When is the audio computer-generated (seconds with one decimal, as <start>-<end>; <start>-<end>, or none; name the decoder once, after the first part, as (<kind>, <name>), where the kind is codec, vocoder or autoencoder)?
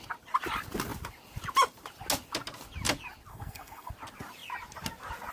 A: 3.3-3.9 (codec, SNAC)